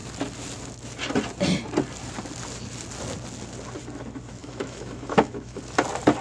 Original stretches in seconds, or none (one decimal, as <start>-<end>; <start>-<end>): 0.0-4.4; 5.6-6.2